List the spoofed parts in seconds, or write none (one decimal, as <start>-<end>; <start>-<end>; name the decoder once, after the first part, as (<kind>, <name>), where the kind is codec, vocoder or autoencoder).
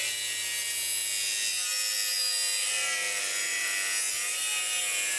none